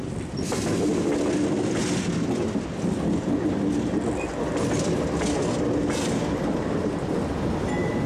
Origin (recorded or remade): recorded